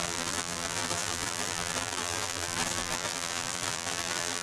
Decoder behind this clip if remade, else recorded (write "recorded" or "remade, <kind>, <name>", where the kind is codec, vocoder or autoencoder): remade, vocoder, BigVGAN v2